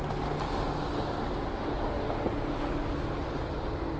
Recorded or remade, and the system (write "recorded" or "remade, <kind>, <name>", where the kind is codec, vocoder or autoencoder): recorded